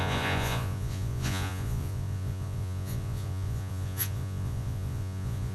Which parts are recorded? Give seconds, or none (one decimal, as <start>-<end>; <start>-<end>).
none